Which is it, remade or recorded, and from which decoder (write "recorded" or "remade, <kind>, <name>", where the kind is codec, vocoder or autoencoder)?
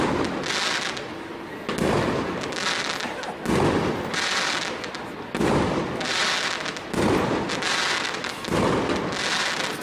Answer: recorded